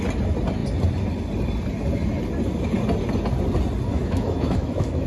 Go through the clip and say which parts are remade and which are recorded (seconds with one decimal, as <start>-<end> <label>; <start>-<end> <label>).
0.0-3.9 recorded; 3.9-5.1 remade

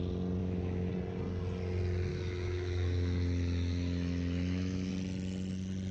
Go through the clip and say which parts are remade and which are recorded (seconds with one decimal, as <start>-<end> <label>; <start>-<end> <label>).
0.0-0.4 recorded; 0.4-0.9 remade; 0.9-2.1 recorded; 2.1-4.9 remade; 4.9-5.9 recorded

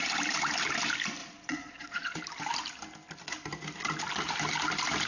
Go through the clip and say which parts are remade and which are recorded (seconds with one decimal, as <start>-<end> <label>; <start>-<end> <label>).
0.0-1.2 recorded; 1.2-2.2 remade; 2.2-5.1 recorded

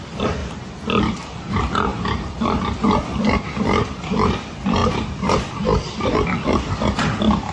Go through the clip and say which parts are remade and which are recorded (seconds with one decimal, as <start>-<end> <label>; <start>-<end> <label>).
0.0-0.4 remade; 0.4-1.0 recorded; 1.0-7.5 remade

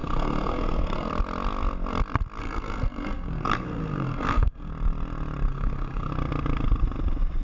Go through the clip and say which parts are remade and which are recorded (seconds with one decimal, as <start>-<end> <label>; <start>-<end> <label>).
0.0-1.1 remade; 1.1-2.4 recorded; 2.4-4.7 remade; 4.7-5.5 recorded; 5.5-6.1 remade; 6.1-7.4 recorded

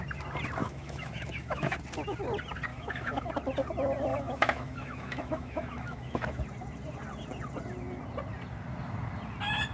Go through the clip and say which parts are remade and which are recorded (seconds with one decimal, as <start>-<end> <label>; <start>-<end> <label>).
0.0-0.6 recorded; 0.6-1.8 remade; 1.8-2.7 recorded; 2.7-3.3 remade; 3.3-4.1 recorded; 4.1-6.4 remade; 6.4-9.7 recorded

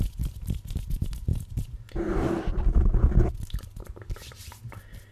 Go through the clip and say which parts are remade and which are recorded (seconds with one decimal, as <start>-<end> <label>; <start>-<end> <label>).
0.0-5.1 recorded

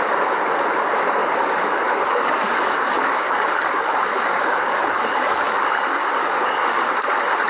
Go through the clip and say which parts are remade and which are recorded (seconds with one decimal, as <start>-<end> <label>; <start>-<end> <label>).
0.0-1.2 recorded; 1.2-5.7 remade; 5.7-6.2 recorded; 6.2-6.9 remade; 6.9-7.5 recorded